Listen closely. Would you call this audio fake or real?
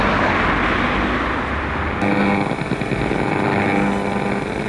real